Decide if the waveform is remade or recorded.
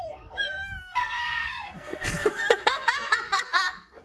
remade